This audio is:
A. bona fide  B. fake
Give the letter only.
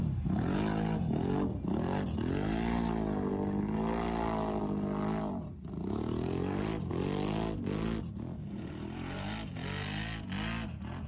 A